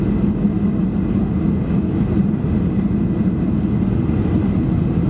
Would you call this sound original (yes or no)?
yes